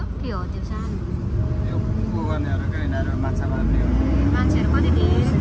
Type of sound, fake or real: real